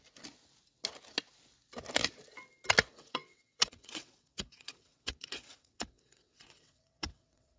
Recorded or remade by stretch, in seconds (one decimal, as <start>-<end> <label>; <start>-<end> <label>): 0.0-2.9 recorded; 2.9-7.6 remade